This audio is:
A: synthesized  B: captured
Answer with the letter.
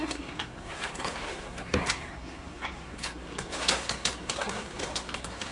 A